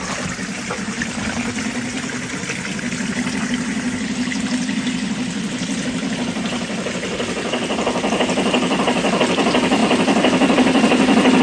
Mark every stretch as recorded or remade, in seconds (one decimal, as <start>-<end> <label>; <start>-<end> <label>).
0.0-11.4 recorded